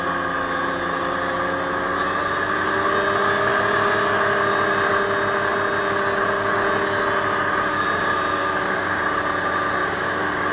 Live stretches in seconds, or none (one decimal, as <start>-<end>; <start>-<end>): 0.0-8.4; 9.0-9.8